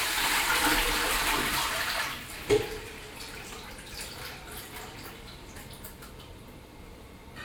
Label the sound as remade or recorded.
remade